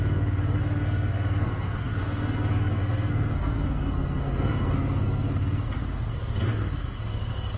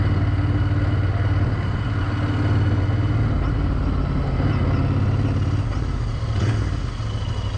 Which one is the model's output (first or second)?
first